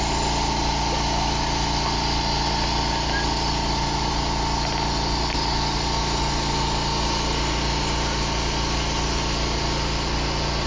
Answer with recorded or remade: recorded